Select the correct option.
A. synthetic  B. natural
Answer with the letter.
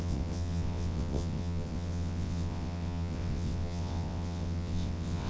A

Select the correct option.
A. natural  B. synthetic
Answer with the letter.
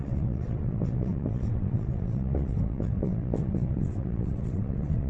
B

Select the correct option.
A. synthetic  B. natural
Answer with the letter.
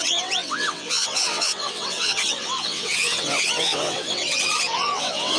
A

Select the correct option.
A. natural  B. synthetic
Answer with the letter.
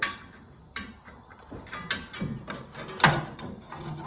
A